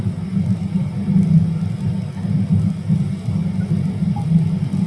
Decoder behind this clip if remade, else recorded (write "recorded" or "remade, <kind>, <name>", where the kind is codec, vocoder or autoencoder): recorded